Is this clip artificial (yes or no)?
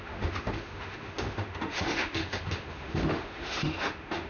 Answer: yes